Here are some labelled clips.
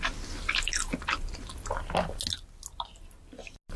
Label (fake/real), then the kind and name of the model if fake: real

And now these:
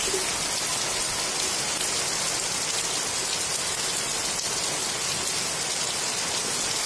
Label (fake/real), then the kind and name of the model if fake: real